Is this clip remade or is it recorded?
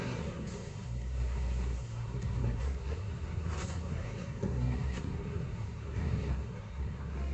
remade